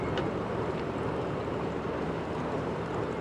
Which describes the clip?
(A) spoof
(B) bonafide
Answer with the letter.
A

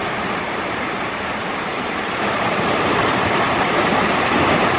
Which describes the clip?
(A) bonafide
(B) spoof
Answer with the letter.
B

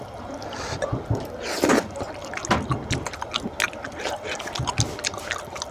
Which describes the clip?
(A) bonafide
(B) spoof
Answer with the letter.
A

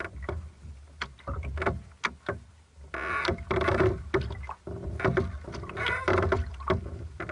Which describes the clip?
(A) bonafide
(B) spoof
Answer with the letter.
A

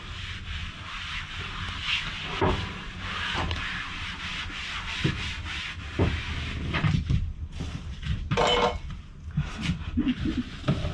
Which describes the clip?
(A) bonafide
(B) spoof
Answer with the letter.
A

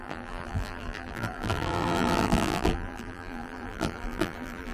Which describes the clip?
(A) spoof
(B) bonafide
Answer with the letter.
A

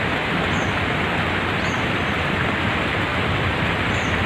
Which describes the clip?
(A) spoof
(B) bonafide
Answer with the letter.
B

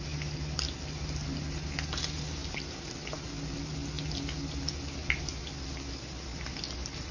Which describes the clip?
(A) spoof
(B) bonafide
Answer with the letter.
B